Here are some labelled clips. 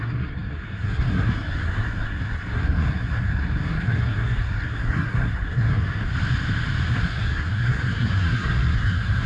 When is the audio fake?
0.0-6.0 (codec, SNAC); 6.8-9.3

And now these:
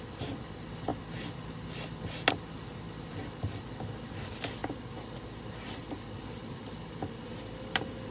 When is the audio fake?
none

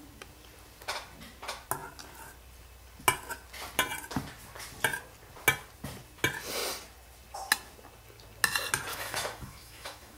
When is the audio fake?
8.9-10.2 (autoencoder, DAC-VAE)

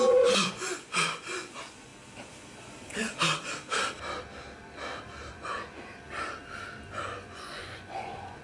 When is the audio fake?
0.0-1.9 (vocoder, Vocos); 5.3-5.9; 7.0-8.4

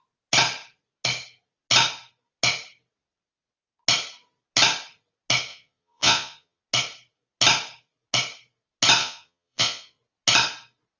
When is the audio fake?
5.5-6.6 (vocoder, Vocos); 9.0-10.0

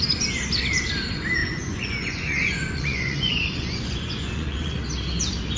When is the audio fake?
1.4-4.8 (vocoder, Vocos)